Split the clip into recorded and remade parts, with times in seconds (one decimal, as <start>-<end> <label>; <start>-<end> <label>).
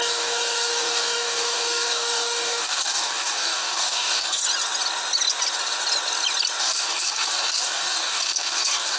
0.0-4.4 remade; 4.4-6.6 recorded; 6.6-9.0 remade